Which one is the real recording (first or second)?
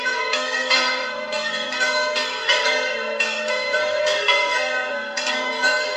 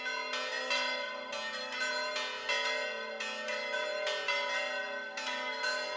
second